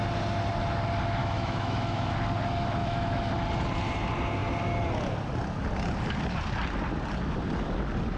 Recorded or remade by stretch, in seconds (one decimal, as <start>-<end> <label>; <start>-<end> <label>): 0.0-1.2 recorded; 1.2-2.1 remade; 2.1-2.8 recorded; 2.8-3.3 remade; 3.3-8.2 recorded